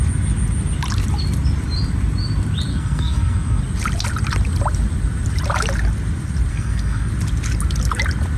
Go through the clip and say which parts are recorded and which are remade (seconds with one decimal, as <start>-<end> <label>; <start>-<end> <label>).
0.0-2.7 recorded; 2.7-3.6 remade; 3.6-6.5 recorded; 6.5-7.1 remade; 7.1-8.4 recorded